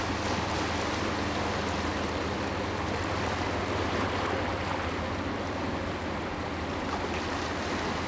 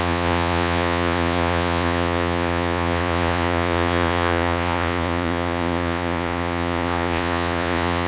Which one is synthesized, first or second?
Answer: second